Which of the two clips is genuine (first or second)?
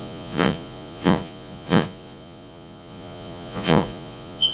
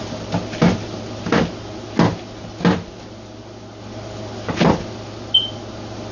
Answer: second